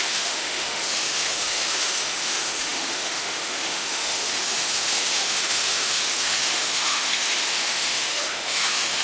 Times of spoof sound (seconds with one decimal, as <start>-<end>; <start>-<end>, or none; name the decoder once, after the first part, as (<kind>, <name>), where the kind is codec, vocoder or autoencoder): 0.0-9.0 (autoencoder, DAC-VAE)